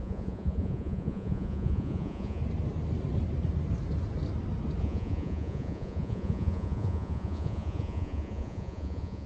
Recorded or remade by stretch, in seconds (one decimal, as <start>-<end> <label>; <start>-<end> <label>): 0.0-2.4 remade; 2.4-4.8 recorded; 4.8-9.3 remade